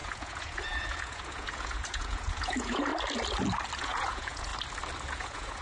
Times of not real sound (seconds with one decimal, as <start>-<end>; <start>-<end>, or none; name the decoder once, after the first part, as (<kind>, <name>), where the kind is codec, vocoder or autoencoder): 0.0-2.9 (vocoder, Vocos); 3.8-4.5; 5.1-5.6